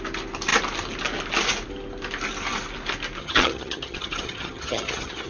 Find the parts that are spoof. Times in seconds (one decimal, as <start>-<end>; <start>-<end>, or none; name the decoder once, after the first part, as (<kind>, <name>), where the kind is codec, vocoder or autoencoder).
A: 3.2-5.3 (vocoder, HiFi-GAN)